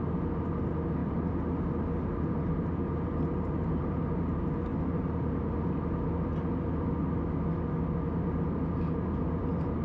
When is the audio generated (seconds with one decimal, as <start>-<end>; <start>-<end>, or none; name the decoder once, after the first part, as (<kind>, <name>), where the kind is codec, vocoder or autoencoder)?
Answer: none